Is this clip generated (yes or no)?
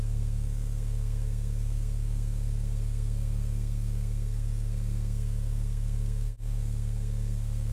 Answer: yes